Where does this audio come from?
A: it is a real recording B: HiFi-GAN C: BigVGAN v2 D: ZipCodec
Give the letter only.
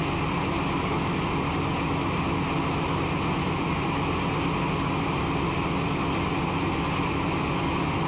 A